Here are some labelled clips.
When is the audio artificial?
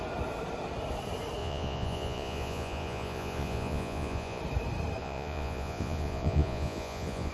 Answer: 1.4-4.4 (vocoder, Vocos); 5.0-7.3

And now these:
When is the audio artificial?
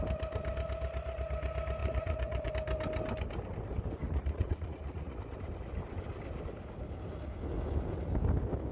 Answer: 1.8-2.5 (vocoder, Vocos); 4.0-5.2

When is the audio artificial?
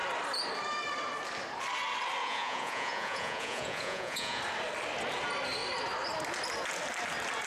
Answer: 2.2-4.4 (vocoder, Vocos)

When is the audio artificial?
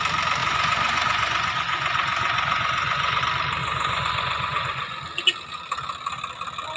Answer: 0.4-3.2 (vocoder, Vocos); 3.6-5.0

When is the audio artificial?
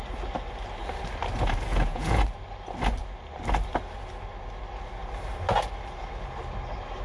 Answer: 1.7-2.2 (vocoder, Vocos)